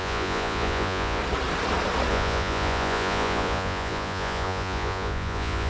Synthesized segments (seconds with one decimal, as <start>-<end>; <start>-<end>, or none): 0.0-1.2; 2.1-5.7